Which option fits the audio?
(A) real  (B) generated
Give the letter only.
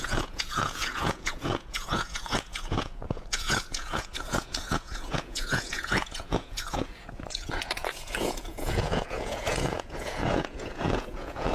B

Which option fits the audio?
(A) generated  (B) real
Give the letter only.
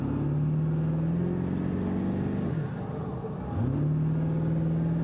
B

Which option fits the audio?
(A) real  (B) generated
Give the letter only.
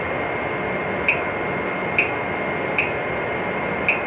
A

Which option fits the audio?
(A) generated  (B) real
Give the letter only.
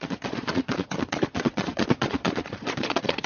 A